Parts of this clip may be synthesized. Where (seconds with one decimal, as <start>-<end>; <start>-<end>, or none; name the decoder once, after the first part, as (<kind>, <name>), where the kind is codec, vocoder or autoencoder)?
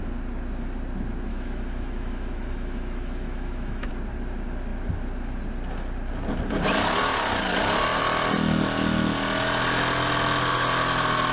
1.3-3.9 (autoencoder, DAC-VAE)